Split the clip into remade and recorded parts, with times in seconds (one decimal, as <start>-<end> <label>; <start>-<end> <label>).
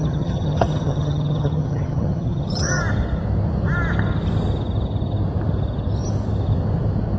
0.0-2.8 remade; 2.8-7.2 recorded